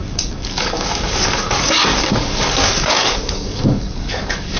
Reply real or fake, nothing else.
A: fake